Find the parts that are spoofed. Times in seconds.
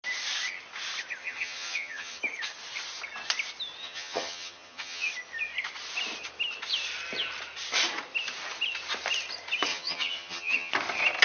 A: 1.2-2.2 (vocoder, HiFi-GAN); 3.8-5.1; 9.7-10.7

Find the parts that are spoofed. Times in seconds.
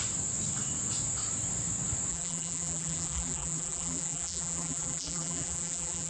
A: 2.1-6.1 (vocoder, BigVGAN v2)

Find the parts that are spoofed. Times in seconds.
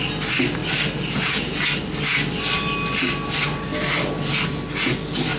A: 3.7-4.3 (vocoder, BigVGAN v2)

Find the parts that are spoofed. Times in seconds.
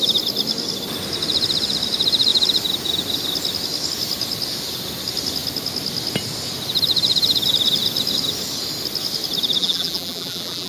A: 9.6-10.7 (vocoder, BigVGAN v2)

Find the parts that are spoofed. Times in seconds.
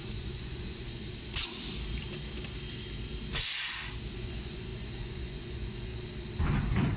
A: 0.0-1.0 (vocoder, Vocos); 4.1-5.9; 6.6-7.0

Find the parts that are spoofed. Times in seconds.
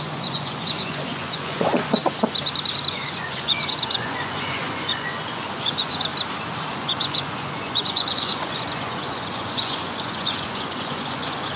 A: 0.0-2.0 (vocoder, Vocos); 2.9-6.1; 6.7-11.6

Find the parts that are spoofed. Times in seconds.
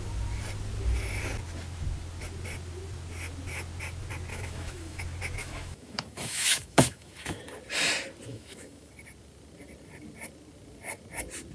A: 4.3-5.0 (autoencoder, DAC-VAE); 5.4-7.4; 8.3-8.9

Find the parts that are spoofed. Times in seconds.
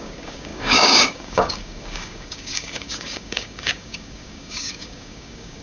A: 0.0-5.6 (codec, DAC)